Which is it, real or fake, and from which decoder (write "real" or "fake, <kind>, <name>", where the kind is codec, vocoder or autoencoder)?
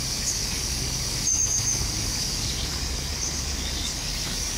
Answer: fake, codec, DAC